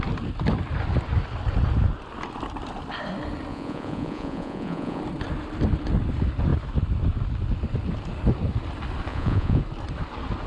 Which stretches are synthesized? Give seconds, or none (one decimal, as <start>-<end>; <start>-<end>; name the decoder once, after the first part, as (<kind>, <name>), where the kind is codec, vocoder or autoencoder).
3.5-5.0 (vocoder, Vocos); 9.1-9.6